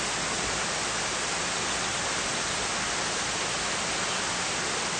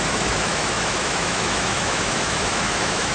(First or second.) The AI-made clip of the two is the second